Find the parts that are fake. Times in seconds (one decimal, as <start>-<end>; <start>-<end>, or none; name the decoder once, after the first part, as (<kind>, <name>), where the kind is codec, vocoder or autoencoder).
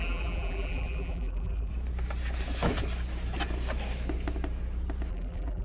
0.0-1.7 (vocoder, BigVGAN v2); 5.1-5.6